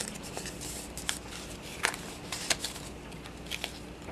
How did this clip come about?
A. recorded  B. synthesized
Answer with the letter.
A